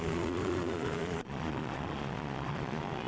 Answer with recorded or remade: remade